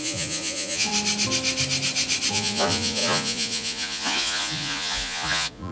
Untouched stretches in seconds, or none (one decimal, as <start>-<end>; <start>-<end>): 0.9-2.3